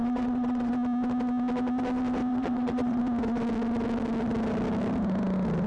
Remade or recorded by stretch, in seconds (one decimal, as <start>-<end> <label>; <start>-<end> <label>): 0.0-0.7 remade; 0.7-2.3 recorded; 2.3-3.0 remade; 3.0-5.7 recorded